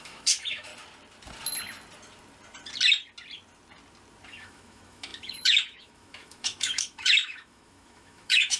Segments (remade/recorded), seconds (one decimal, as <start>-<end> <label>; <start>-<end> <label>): 0.0-0.7 remade; 0.7-4.2 recorded; 4.2-8.6 remade